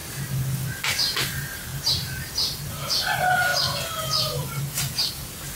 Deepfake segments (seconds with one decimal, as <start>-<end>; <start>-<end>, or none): none